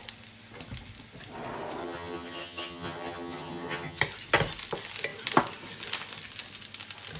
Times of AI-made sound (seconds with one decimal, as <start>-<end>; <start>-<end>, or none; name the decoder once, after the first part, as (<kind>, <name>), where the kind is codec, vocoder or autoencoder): 1.8-4.0 (vocoder, HiFi-GAN)